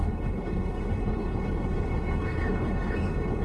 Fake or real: fake